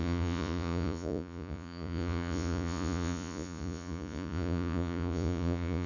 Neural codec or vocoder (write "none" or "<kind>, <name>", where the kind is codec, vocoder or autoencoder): vocoder, Vocos